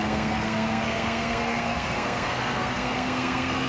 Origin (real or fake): fake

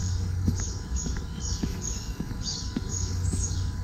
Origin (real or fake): fake